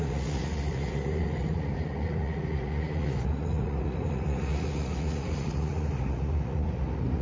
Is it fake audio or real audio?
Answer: fake